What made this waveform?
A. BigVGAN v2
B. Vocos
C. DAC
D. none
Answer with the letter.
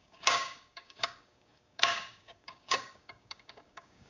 C